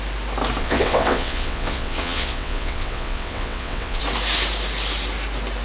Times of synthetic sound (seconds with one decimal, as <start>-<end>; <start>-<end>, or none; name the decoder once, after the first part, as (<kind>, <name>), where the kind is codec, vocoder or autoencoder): 0.6-4.0 (vocoder, WaveNeXt)

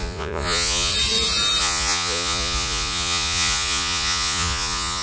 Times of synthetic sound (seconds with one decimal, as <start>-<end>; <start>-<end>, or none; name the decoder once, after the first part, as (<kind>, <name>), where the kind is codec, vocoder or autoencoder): 0.0-0.9 (vocoder, Vocos); 1.6-5.0

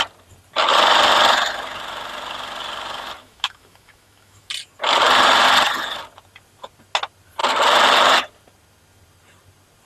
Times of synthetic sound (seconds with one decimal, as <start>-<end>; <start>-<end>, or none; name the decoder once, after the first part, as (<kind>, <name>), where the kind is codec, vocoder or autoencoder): 3.2-4.5 (autoencoder, DAC-VAE)

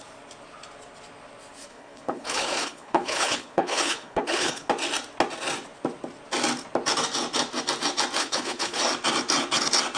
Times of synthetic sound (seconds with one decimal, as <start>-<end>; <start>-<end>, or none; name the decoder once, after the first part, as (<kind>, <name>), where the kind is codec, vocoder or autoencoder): 1.6-4.7 (codec, HILCodec); 8.2-8.8

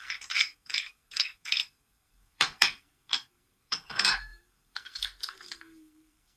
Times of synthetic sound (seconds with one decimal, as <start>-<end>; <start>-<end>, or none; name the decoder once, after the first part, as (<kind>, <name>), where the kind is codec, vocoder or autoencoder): 0.0-6.4 (codec, SNAC)

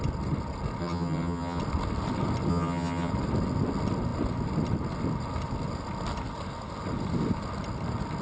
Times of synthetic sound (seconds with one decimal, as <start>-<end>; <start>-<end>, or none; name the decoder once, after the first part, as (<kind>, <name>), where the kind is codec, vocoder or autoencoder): 0.8-1.6 (vocoder, HiFi-GAN); 2.5-3.1

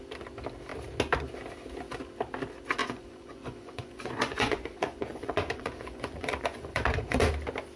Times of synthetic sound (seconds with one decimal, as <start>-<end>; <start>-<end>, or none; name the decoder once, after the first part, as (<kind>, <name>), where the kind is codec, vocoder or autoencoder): 2.8-7.3 (vocoder, Vocos)

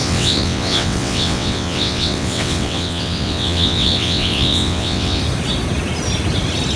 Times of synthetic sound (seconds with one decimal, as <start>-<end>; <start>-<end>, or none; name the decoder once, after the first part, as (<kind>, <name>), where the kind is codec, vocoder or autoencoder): 0.0-5.2 (vocoder, WaveNeXt)